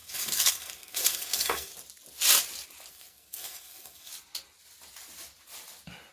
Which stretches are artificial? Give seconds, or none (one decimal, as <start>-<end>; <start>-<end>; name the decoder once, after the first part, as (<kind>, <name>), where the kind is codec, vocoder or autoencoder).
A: 0.0-1.7 (codec, SNAC); 2.9-4.1